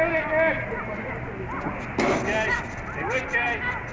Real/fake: real